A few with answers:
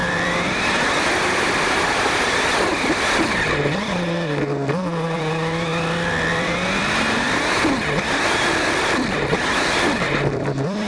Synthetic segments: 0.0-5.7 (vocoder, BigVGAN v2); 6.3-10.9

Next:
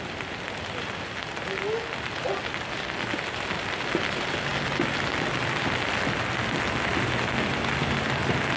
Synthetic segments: none

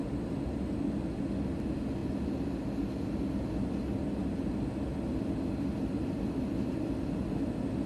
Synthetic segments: none

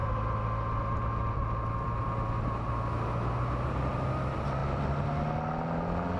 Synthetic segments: none

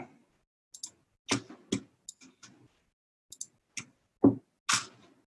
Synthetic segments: none